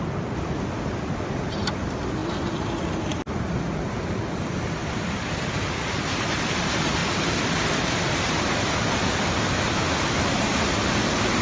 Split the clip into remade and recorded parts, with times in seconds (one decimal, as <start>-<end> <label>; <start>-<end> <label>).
0.0-11.4 recorded